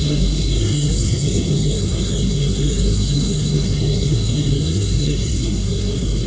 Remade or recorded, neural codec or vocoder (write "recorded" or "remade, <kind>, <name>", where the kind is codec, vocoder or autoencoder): remade, codec, SNAC